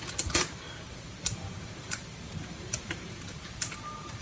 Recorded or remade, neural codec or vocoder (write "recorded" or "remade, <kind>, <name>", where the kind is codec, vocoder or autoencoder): remade, vocoder, BigVGAN v2